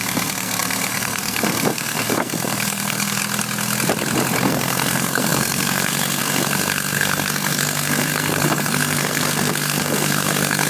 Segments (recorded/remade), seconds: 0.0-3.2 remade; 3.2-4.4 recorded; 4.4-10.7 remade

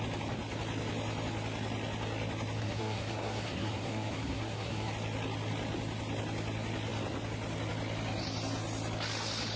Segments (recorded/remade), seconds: 0.0-2.6 recorded; 2.6-4.9 remade; 4.9-9.6 recorded

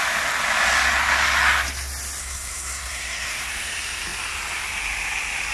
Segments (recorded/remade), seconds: 0.0-2.2 recorded; 2.2-3.5 remade; 3.5-5.5 recorded